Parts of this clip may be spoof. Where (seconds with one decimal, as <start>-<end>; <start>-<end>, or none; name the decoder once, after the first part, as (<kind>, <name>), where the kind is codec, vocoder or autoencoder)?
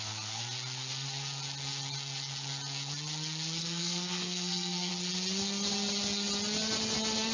3.6-4.9 (codec, SNAC)